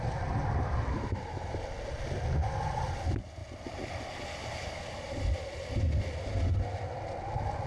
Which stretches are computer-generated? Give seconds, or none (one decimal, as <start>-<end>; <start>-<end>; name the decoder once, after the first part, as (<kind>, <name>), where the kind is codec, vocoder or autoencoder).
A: none